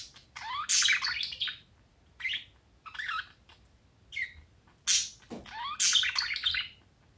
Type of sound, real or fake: real